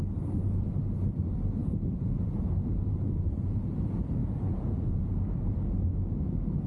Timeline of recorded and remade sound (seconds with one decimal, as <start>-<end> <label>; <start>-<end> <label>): 0.0-1.6 recorded; 1.6-3.2 remade; 3.2-4.2 recorded; 4.2-5.1 remade; 5.1-6.7 recorded